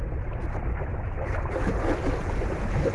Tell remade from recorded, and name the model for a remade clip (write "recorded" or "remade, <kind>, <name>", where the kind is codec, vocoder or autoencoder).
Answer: recorded